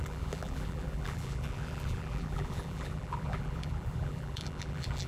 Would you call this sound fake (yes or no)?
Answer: yes